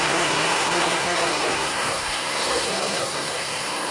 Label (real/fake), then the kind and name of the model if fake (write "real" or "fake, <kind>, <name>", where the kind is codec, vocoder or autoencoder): fake, codec, SNAC